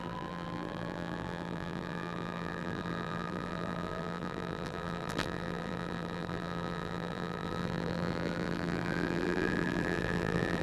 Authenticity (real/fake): fake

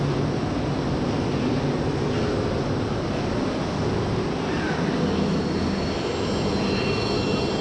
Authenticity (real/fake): real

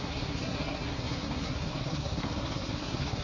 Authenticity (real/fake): fake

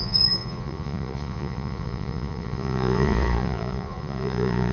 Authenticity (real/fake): fake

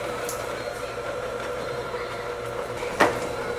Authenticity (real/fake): fake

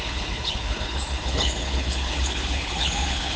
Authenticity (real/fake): fake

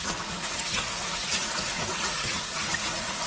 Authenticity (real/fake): fake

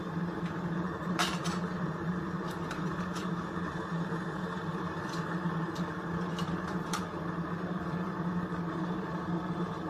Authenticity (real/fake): fake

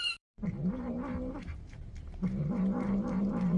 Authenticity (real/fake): fake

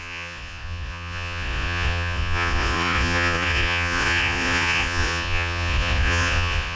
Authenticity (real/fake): fake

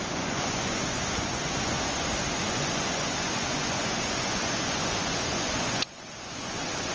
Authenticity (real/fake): fake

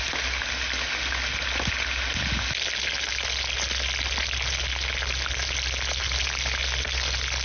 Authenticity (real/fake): real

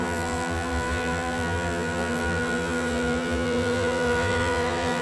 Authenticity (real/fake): fake